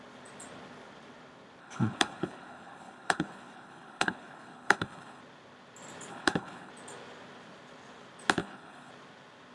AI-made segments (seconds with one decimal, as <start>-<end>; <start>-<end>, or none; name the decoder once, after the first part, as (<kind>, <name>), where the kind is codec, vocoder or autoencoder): 1.6-5.2 (codec, HILCodec); 6.1-6.7; 8.4-8.9